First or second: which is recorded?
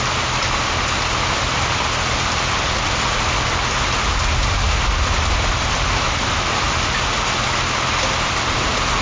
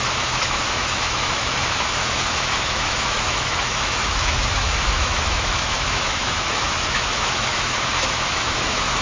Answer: first